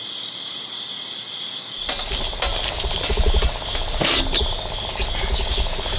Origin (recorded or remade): recorded